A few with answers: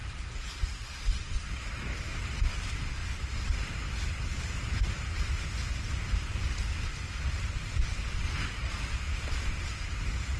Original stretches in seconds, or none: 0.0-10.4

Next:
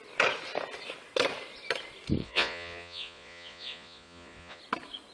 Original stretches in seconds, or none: 0.0-2.2; 4.6-5.1

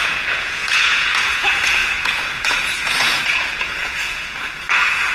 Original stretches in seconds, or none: none

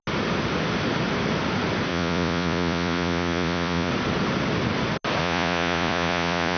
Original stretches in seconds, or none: 0.0-1.9; 3.9-5.2

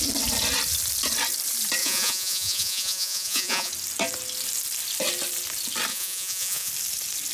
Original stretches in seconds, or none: 0.0-1.8; 3.7-5.9; 6.7-7.3

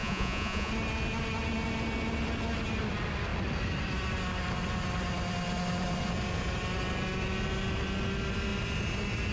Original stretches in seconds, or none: 0.7-9.3

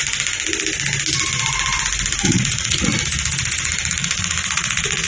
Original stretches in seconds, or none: 0.0-2.2; 2.9-3.9